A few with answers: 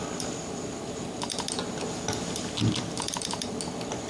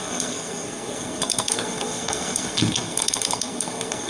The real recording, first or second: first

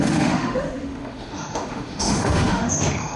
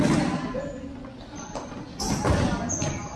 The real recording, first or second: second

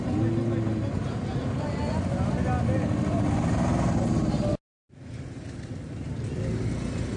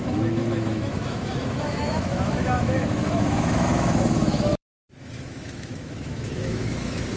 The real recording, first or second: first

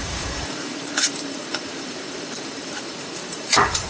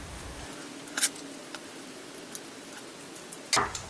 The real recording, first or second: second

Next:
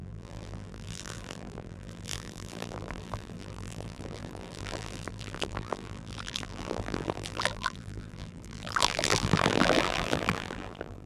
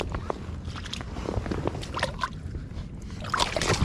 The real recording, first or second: second